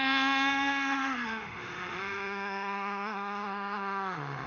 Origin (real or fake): fake